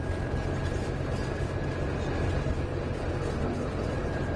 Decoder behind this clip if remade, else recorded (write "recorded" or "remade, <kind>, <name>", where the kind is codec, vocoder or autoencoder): recorded